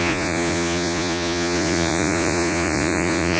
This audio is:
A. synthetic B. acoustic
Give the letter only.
A